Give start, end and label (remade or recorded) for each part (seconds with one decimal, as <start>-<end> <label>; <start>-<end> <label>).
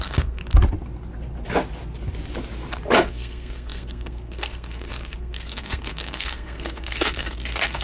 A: 0.0-0.4 remade; 0.4-3.1 recorded; 3.1-7.8 remade